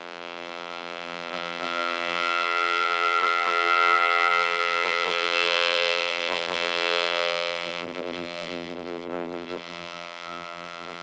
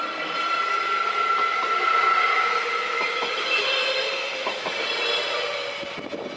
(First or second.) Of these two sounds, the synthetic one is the first